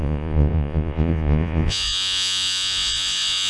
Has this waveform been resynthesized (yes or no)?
yes